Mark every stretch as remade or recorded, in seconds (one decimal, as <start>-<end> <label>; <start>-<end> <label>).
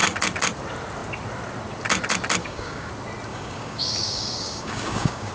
0.0-2.4 recorded; 2.4-2.9 remade; 2.9-3.3 recorded; 3.3-5.3 remade